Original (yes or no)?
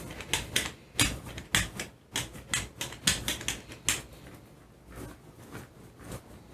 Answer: yes